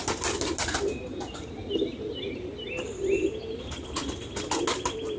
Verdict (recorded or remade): recorded